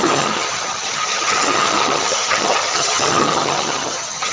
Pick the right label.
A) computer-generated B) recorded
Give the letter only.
A